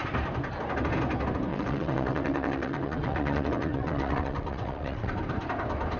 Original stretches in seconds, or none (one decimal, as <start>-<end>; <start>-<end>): 0.0-1.5; 5.1-6.0